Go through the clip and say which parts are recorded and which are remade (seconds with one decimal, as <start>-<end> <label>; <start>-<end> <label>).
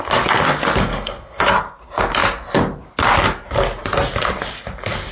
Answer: 0.0-0.8 recorded; 0.8-1.4 remade; 1.4-5.1 recorded